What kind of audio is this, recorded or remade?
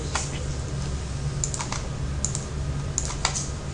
recorded